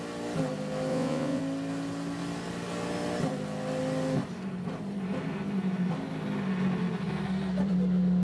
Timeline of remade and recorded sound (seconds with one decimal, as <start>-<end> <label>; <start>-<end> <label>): 0.0-0.9 recorded; 0.9-1.4 remade; 1.4-8.2 recorded